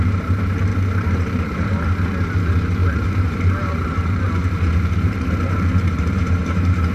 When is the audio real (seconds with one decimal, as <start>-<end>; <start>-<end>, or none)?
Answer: 0.0-0.7; 1.7-2.8